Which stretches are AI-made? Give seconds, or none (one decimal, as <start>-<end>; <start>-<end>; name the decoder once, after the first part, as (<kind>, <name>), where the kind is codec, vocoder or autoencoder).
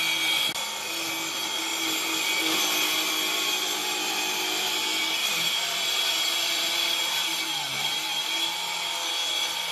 3.8-4.7 (vocoder, BigVGAN v2); 5.2-7.4